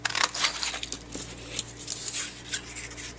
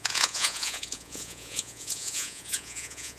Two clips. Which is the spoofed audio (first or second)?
second